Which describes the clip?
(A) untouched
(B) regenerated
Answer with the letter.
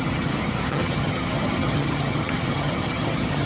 B